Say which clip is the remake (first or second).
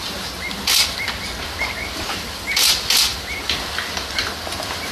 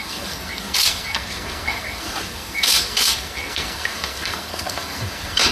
second